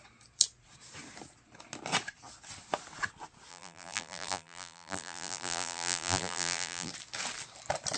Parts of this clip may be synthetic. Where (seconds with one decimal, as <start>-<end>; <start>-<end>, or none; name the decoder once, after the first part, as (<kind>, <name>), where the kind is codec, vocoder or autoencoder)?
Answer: 3.5-6.9 (vocoder, BigVGAN v2)